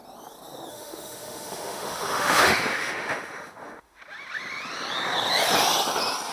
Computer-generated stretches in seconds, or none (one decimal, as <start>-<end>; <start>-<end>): 0.7-4.0